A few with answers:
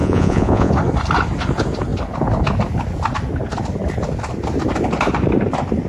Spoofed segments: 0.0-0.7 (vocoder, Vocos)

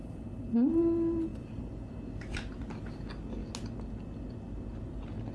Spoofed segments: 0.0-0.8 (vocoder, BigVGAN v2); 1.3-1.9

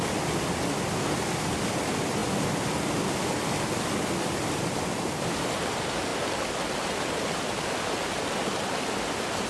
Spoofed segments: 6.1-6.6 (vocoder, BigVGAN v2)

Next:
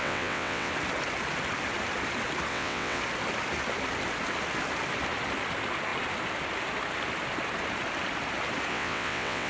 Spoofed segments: 0.0-0.7 (vocoder, WaveNeXt); 2.5-3.0; 8.7-9.5

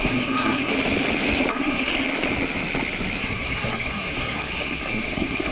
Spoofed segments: 0.0-0.7 (codec, SNAC); 1.5-1.9; 3.2-5.5